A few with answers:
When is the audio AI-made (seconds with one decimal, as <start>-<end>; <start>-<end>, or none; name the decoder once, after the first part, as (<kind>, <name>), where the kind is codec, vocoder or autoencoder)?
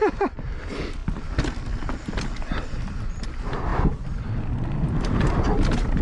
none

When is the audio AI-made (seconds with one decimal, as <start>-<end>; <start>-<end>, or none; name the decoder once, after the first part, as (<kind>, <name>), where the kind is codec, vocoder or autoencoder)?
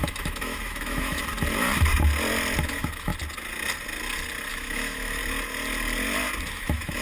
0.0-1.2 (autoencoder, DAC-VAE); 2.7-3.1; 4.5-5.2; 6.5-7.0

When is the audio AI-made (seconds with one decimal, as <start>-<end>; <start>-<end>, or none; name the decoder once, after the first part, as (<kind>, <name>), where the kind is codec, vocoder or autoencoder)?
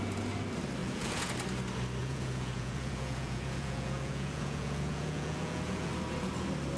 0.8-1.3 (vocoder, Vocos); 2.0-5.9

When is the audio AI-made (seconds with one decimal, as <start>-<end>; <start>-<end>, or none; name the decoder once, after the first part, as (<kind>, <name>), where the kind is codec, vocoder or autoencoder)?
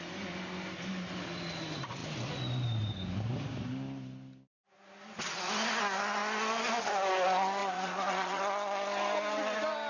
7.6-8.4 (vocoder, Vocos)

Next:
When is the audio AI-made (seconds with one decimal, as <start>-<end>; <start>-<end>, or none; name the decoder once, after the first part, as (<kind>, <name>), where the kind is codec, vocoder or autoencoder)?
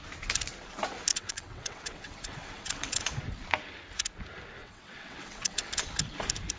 1.1-3.1 (vocoder, WaveNeXt); 4.6-5.7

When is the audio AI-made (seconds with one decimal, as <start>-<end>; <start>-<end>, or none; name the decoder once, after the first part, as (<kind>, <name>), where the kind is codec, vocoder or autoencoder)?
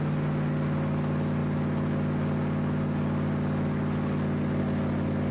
none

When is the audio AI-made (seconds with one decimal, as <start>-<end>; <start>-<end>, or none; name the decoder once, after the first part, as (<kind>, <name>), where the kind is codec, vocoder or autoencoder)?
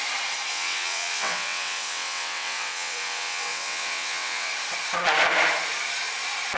0.5-4.5 (vocoder, WaveNeXt)